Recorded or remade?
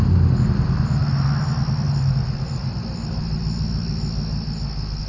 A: recorded